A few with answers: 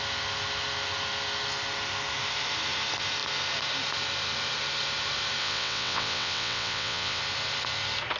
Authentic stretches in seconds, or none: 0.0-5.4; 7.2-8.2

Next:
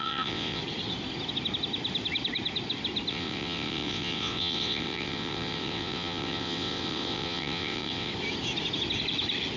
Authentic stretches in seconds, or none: 0.6-3.1; 8.1-9.6